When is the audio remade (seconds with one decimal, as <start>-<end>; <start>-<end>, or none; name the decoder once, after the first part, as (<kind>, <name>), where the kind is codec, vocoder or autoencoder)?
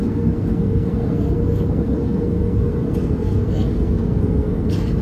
0.0-5.0 (codec, SNAC)